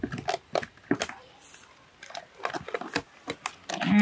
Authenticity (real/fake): real